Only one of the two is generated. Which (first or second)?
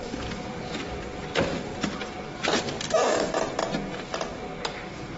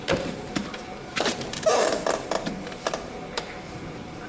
second